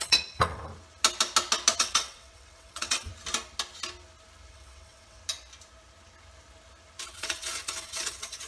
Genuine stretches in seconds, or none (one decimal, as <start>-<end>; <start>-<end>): 0.7-1.8; 3.1-4.5; 5.2-7.0